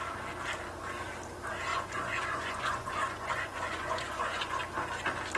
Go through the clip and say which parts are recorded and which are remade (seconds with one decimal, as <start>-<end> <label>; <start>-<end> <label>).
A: 0.0-1.7 recorded; 1.7-4.6 remade; 4.6-5.4 recorded